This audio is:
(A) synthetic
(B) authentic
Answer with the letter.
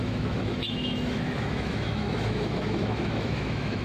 A